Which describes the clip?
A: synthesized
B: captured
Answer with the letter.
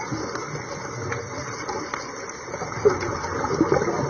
B